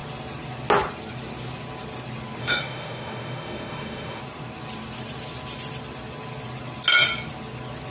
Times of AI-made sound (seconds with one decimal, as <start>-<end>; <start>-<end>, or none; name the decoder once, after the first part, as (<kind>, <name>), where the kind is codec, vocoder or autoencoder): 2.4-4.2 (autoencoder, DAC-VAE)